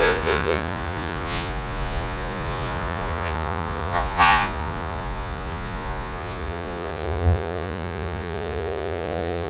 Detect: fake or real fake